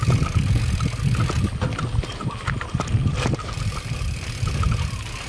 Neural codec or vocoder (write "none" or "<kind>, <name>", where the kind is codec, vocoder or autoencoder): none